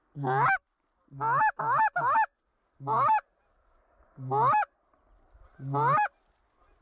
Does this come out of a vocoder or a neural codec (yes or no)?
no